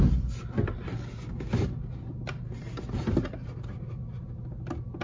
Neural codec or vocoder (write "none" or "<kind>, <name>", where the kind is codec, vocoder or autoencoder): none